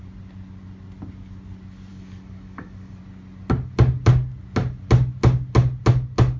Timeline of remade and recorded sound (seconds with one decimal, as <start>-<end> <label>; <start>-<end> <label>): 0.0-1.9 recorded; 1.9-3.0 remade; 3.0-6.4 recorded